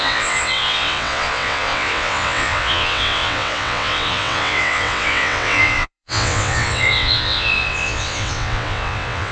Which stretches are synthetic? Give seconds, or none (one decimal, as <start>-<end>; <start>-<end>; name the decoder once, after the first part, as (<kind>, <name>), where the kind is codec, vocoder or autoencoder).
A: 0.0-9.3 (vocoder, WaveNeXt)

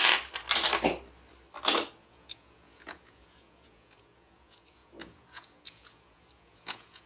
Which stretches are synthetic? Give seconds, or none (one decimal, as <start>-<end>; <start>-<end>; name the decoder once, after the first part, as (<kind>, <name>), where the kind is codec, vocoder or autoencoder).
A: 2.0-7.1 (vocoder, Vocos)